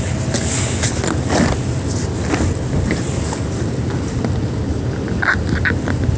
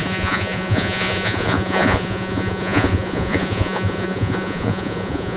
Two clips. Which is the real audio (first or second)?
first